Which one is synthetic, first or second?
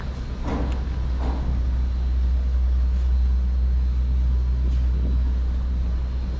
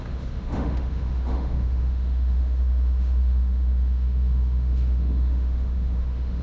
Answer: second